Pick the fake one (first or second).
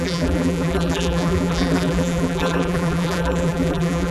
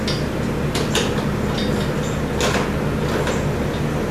first